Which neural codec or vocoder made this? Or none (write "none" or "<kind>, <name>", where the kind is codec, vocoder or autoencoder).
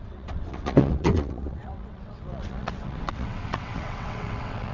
vocoder, WaveNeXt